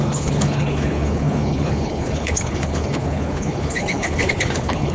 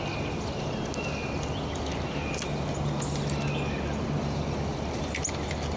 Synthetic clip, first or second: first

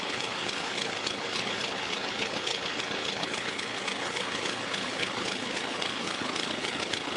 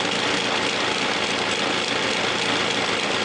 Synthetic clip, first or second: first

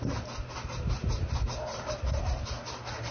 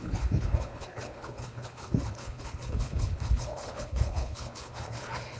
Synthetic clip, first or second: second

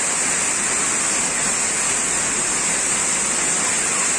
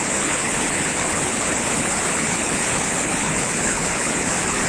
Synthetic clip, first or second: second